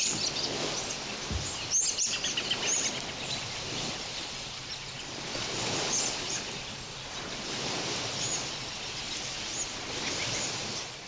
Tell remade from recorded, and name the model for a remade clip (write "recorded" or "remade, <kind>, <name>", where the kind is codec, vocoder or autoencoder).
recorded